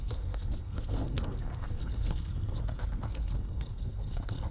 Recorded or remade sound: remade